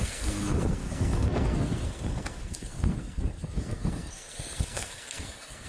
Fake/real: fake